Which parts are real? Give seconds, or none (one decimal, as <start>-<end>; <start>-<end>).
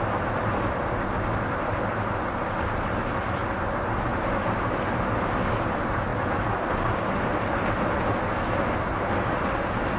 0.0-10.0